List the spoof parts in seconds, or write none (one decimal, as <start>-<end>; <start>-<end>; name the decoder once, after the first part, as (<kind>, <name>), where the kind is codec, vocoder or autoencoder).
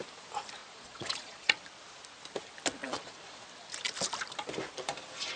0.6-1.5 (vocoder, Vocos); 2.8-3.5